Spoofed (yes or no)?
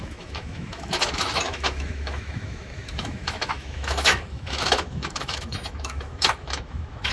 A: yes